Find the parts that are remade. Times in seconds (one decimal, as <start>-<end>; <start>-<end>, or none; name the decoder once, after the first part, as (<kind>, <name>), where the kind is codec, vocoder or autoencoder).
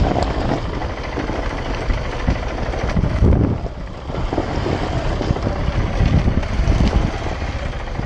none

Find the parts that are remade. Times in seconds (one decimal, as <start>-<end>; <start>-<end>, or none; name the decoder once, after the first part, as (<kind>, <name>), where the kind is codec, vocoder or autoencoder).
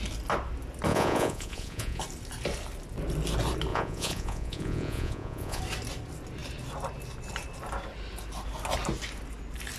0.9-2.0 (vocoder, Vocos); 3.7-5.6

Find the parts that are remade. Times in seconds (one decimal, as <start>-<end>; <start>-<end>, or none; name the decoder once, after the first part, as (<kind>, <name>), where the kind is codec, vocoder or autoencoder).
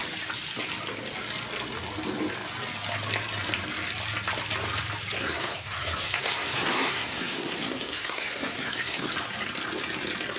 5.2-9.1 (codec, SNAC)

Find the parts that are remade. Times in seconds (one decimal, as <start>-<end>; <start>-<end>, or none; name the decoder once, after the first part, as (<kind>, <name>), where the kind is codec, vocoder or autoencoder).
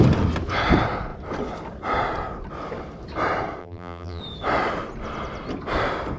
3.6-4.2 (vocoder, BigVGAN v2)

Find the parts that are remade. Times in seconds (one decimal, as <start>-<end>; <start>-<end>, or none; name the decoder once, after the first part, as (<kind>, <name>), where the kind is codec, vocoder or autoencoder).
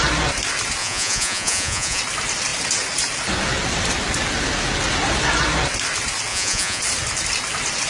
0.8-2.0 (vocoder, Vocos); 6.3-6.8